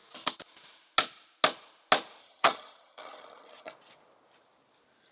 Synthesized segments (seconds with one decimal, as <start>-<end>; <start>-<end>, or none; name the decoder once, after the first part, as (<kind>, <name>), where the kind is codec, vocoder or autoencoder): 2.2-3.7 (vocoder, HiFi-GAN)